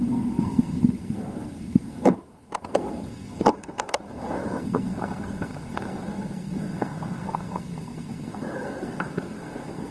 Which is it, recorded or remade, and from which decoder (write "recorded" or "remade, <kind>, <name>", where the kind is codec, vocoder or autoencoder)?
remade, codec, SNAC